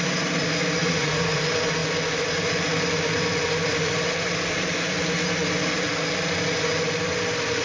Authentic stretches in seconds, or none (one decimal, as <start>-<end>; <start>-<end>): 0.0-0.8; 1.4-7.6